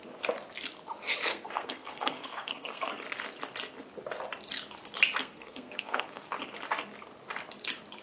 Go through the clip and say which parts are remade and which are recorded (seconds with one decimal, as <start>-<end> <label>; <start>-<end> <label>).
0.0-1.3 recorded; 1.3-2.9 remade; 2.9-5.2 recorded; 5.2-6.4 remade; 6.4-8.0 recorded